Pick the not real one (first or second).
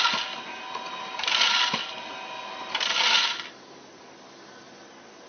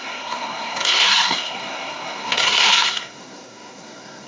second